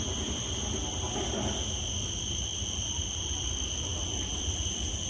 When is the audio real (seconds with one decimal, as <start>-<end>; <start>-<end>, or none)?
0.0-5.1